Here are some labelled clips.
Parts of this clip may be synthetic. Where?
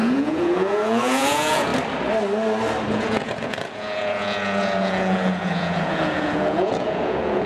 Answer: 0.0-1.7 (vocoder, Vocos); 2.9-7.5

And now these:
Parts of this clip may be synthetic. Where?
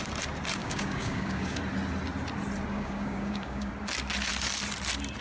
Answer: 0.6-1.6 (codec, DAC); 2.7-3.7